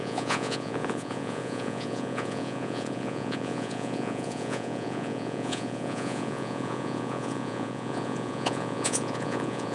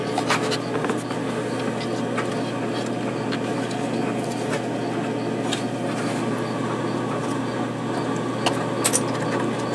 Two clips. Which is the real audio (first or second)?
second